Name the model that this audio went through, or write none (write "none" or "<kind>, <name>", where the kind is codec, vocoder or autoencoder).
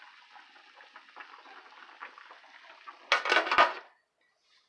none